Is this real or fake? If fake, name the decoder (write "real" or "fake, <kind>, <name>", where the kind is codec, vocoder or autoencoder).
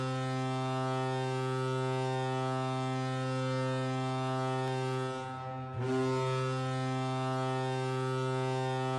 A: real